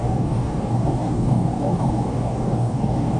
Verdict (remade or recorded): remade